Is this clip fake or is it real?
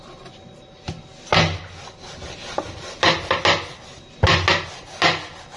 real